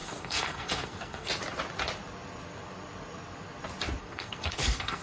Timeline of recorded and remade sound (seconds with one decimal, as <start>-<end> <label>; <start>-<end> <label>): 0.0-1.3 remade; 1.3-4.0 recorded; 4.0-5.0 remade